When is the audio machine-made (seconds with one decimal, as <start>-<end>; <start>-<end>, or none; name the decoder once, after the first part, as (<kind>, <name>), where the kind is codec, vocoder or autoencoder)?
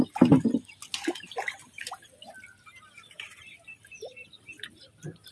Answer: none